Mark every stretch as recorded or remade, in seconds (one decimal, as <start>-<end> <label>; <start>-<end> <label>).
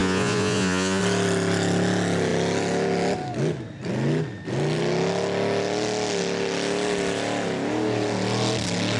0.0-1.0 remade; 1.0-9.0 recorded